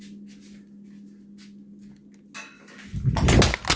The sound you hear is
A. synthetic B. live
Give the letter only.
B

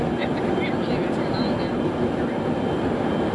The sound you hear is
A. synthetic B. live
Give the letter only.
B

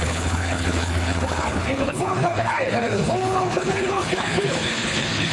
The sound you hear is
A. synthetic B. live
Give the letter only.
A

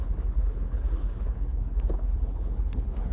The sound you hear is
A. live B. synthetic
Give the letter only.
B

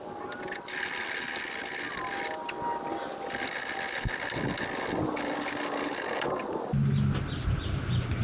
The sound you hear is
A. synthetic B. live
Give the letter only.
B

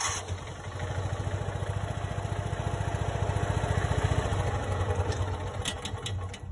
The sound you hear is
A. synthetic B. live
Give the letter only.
B